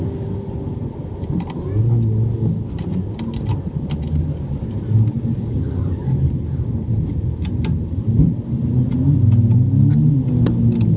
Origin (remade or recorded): recorded